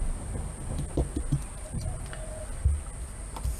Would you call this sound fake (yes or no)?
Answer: no